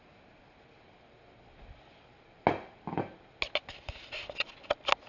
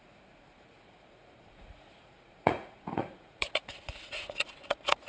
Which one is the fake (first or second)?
second